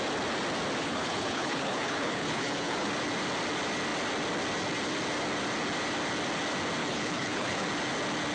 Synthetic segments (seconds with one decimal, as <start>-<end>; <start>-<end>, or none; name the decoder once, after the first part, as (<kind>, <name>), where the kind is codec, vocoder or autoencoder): 0.8-2.9 (codec, HILCodec); 6.8-7.7